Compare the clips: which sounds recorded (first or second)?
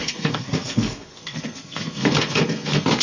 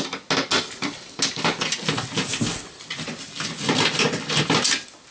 second